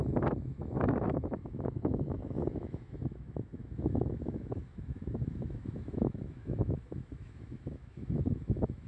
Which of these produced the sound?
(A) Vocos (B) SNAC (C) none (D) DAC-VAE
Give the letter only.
D